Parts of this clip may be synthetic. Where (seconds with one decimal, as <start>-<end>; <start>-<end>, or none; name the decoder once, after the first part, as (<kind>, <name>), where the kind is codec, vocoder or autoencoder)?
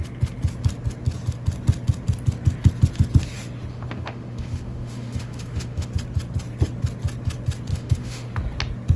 3.7-5.9 (autoencoder, DAC-VAE); 7.7-8.3